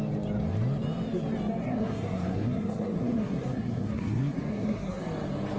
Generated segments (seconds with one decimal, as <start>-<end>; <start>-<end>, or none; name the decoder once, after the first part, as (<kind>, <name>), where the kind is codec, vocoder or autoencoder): 1.6-5.0 (codec, SNAC)